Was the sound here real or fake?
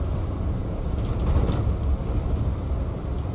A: real